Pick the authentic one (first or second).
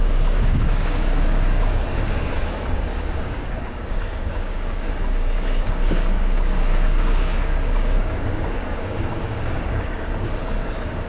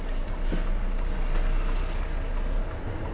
second